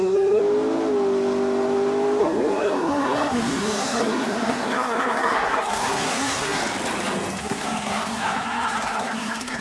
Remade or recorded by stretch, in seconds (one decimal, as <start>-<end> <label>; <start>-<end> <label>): 0.0-0.4 remade; 0.4-2.2 recorded; 2.2-6.6 remade; 6.6-7.4 recorded; 7.4-9.6 remade